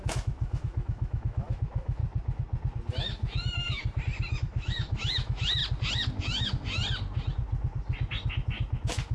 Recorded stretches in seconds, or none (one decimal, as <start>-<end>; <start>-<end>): 2.0-2.9; 3.8-4.4; 5.6-6.2; 6.8-9.1